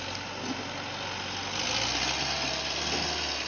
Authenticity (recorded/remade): recorded